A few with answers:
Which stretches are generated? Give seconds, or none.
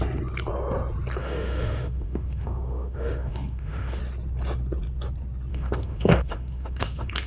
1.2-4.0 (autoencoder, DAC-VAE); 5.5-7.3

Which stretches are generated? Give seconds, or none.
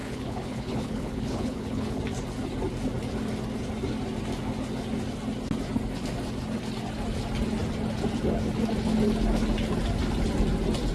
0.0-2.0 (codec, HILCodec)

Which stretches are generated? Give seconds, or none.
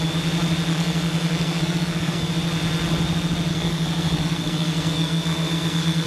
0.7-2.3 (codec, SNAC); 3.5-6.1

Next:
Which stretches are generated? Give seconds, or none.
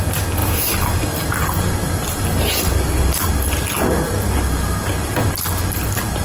none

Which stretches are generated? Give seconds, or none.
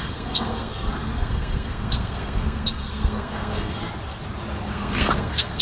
0.0-3.9 (codec, SNAC); 4.7-5.6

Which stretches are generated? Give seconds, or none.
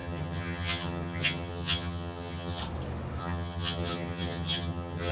0.0-2.6 (vocoder, HiFi-GAN); 3.2-5.1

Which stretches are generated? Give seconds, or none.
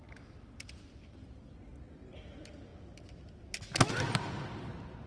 none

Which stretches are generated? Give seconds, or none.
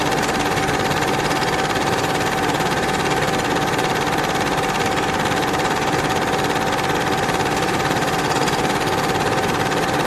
0.0-6.1 (vocoder, BigVGAN v2); 7.2-10.1